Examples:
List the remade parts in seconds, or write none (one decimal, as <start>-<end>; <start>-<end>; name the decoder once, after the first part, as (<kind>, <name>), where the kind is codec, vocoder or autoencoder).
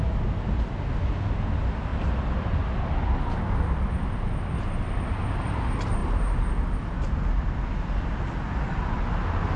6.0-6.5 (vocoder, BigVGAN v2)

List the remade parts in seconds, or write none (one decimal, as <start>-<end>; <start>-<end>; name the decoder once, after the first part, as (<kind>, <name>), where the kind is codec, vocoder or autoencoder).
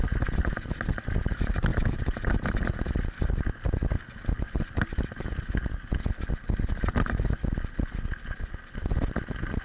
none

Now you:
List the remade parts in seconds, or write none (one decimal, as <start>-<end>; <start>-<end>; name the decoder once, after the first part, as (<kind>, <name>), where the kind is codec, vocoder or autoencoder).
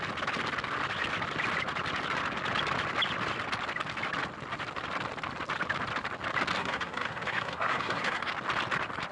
6.6-8.3 (codec, SNAC)